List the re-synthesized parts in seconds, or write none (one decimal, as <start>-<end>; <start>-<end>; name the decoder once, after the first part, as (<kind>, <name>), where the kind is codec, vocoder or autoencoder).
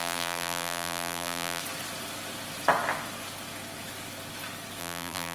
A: 0.0-1.6 (vocoder, BigVGAN v2); 4.8-5.3